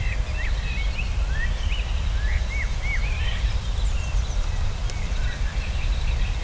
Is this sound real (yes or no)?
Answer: yes